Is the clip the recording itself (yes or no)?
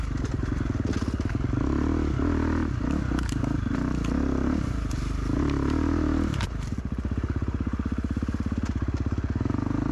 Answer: yes